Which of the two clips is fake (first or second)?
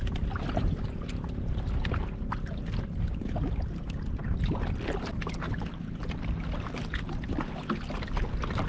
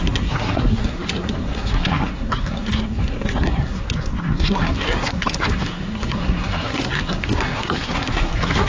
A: second